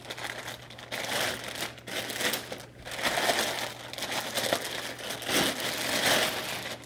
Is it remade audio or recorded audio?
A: recorded